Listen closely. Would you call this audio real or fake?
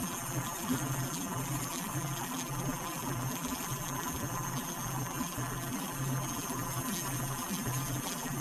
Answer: fake